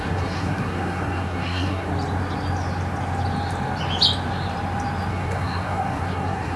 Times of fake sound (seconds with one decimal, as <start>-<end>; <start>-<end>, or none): 0.0-1.9; 5.1-6.6

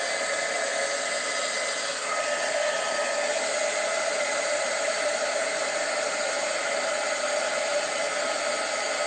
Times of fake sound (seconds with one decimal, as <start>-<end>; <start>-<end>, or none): 3.9-6.7

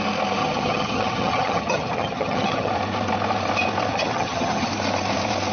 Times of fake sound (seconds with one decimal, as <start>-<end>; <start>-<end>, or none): 0.4-2.7; 3.9-4.7

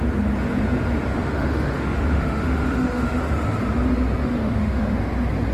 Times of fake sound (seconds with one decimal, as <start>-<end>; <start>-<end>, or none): 1.1-3.2; 4.2-5.0

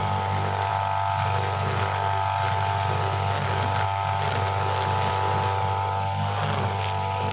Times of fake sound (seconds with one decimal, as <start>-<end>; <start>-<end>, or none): none

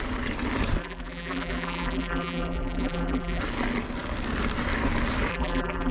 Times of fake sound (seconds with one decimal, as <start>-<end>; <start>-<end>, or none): 0.8-3.4; 5.3-5.9

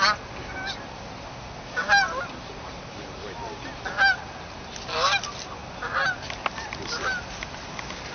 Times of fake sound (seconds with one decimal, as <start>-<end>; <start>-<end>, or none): none

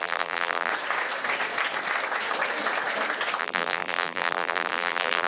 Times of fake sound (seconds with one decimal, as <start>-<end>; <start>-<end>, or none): 0.0-0.7; 3.4-5.3